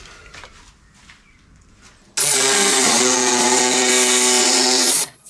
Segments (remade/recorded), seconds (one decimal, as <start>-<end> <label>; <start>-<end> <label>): 0.0-2.2 recorded; 2.2-3.9 remade; 3.9-4.4 recorded; 4.4-5.3 remade